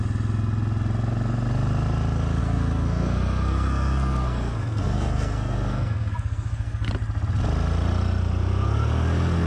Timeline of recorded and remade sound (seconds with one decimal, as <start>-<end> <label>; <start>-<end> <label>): 0.0-2.4 recorded; 2.4-6.9 remade; 6.9-9.5 recorded